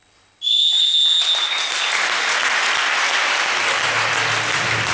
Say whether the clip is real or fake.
real